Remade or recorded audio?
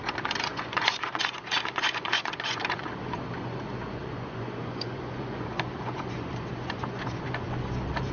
remade